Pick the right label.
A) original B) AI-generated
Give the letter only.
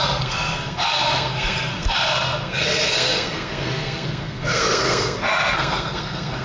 B